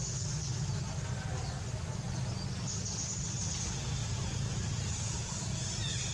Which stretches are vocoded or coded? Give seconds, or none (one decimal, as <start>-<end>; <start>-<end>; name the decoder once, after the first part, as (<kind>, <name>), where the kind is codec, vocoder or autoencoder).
4.0-5.3 (vocoder, BigVGAN v2)